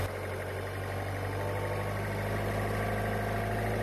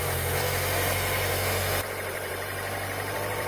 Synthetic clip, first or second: second